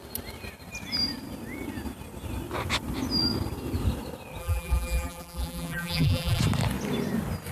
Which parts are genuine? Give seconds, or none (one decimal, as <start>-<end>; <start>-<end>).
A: 0.0-4.4; 6.4-7.5